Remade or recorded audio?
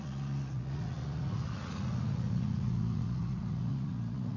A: remade